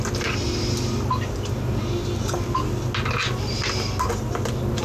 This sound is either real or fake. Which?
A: real